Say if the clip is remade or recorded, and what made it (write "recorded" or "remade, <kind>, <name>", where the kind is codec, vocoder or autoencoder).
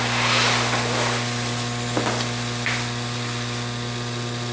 recorded